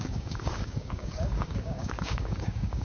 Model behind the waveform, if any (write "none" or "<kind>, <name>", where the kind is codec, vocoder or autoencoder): codec, DAC